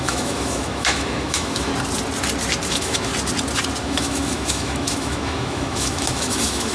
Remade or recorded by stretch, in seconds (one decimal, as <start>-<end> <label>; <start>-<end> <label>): 0.0-1.7 remade; 1.7-2.7 recorded; 2.7-3.1 remade; 3.1-3.8 recorded; 3.8-6.7 remade

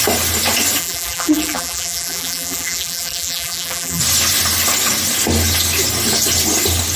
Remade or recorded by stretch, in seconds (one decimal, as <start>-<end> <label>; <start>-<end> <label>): 0.0-0.8 recorded; 0.8-4.0 remade; 4.0-7.0 recorded

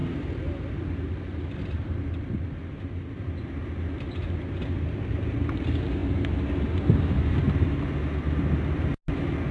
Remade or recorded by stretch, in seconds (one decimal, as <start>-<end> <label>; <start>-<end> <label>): 0.0-9.5 recorded